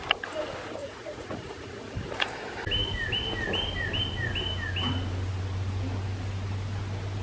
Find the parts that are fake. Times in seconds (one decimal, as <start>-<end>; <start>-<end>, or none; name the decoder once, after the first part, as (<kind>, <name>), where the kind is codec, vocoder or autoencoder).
0.8-1.8 (vocoder, Vocos)